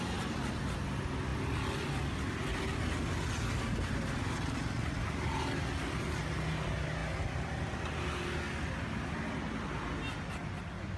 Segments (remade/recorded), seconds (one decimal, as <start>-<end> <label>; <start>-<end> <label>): 0.0-11.0 recorded